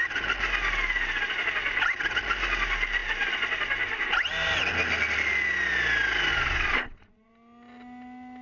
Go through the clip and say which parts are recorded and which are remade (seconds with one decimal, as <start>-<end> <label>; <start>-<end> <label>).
0.0-6.3 recorded; 6.3-7.3 remade; 7.3-8.4 recorded

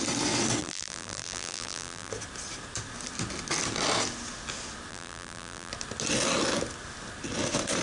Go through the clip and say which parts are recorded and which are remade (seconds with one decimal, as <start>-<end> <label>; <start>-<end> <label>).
0.0-0.6 recorded; 0.6-2.1 remade; 2.1-4.9 recorded; 4.9-5.7 remade; 5.7-7.8 recorded

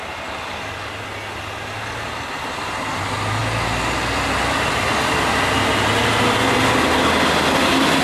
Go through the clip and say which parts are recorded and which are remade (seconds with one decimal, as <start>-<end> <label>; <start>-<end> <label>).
0.0-8.0 recorded

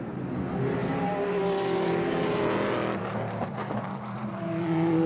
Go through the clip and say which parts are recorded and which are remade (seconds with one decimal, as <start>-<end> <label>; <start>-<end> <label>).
0.0-5.1 recorded

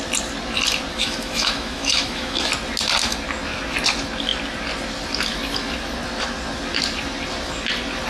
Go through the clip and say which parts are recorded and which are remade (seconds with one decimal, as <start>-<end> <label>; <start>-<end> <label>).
0.0-0.9 recorded; 0.9-2.5 remade; 2.5-8.1 recorded

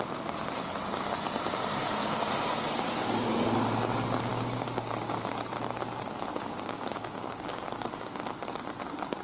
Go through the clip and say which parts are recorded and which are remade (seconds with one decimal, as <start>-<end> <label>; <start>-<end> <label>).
0.0-1.8 recorded; 1.8-2.3 remade; 2.3-4.3 recorded; 4.3-5.3 remade; 5.3-6.3 recorded; 6.3-8.2 remade; 8.2-9.2 recorded

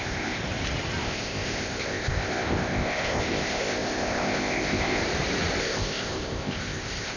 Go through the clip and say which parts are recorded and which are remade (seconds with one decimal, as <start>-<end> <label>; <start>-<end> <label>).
0.0-0.4 remade; 0.4-1.0 recorded; 1.0-5.0 remade; 5.0-5.6 recorded; 5.6-7.2 remade